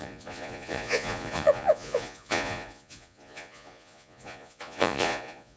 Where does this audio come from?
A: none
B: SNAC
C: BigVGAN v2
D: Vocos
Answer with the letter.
D